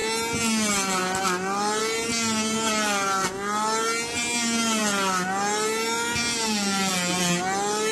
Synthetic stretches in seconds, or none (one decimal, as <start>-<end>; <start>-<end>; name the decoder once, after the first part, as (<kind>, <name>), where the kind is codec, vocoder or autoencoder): none